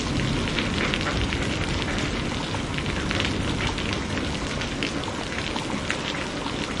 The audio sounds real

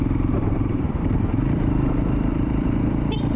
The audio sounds fake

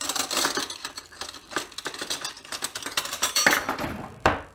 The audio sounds fake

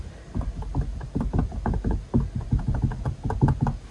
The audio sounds real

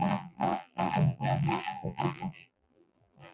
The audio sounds fake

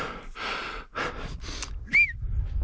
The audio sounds real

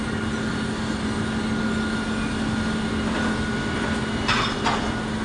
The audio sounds real